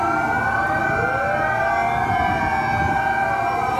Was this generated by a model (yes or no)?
no